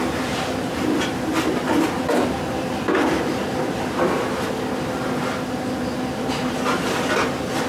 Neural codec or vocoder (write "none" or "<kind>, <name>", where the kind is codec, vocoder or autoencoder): none